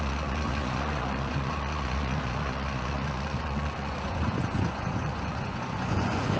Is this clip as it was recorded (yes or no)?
no